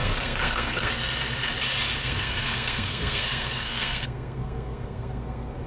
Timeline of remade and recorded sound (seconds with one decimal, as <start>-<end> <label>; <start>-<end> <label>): 0.0-0.9 remade; 0.9-2.0 recorded; 2.0-5.7 remade